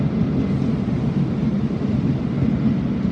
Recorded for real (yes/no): yes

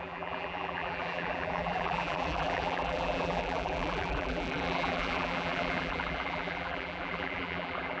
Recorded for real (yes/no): no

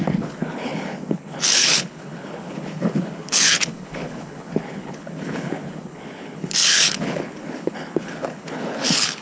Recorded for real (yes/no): no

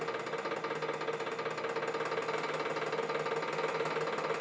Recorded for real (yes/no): yes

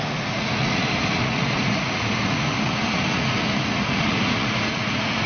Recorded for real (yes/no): no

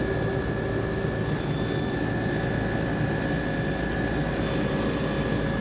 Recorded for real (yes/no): yes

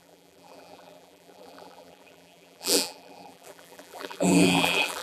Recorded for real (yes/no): no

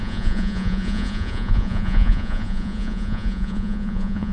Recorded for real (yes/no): no